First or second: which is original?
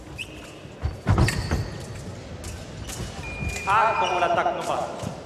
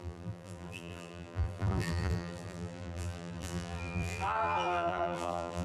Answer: first